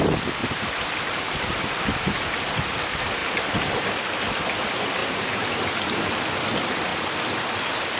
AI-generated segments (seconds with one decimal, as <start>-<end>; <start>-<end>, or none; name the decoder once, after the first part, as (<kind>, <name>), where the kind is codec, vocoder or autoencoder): 3.2-3.9 (vocoder, BigVGAN v2); 5.0-6.1